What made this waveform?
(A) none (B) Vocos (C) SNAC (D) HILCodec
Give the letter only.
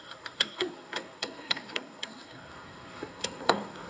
C